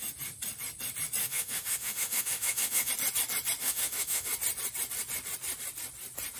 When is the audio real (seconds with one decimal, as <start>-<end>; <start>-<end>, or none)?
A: 0.0-1.2; 2.9-3.6; 4.3-6.4